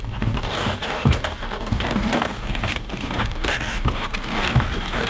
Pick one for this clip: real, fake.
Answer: fake